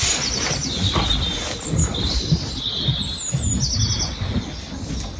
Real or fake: real